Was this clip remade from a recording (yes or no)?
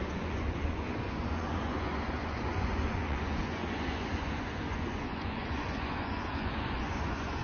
yes